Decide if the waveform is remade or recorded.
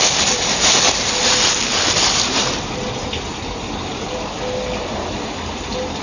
recorded